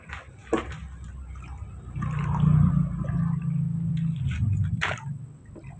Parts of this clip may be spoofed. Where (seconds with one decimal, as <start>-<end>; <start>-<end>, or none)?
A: none